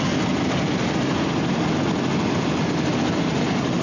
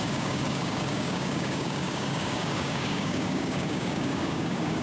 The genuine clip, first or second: first